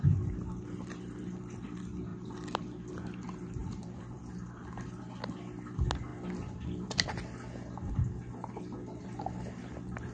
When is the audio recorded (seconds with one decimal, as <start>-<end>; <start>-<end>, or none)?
0.0-2.1; 2.9-3.6; 4.2-10.1